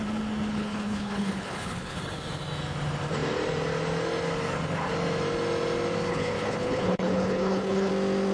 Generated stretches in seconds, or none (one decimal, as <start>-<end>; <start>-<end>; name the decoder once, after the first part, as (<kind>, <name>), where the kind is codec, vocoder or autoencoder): 0.5-2.0 (codec, HILCodec); 6.1-7.9

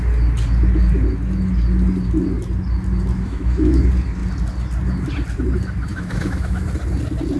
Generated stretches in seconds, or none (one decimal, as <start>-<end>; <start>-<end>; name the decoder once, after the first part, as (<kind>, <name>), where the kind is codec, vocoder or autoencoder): 3.1-3.8 (autoencoder, DAC-VAE); 5.9-6.7

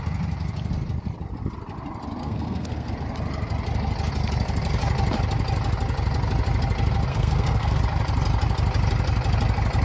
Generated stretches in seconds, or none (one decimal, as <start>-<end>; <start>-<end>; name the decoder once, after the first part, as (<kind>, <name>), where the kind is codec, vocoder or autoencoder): 2.2-2.9 (codec, SNAC); 7.1-7.8

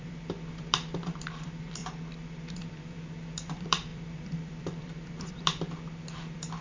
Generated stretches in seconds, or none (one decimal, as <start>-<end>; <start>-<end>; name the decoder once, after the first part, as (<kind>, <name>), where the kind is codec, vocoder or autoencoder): 0.0-1.8 (vocoder, BigVGAN v2); 2.5-6.6